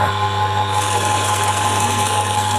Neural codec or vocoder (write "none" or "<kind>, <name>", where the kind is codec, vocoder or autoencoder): codec, SNAC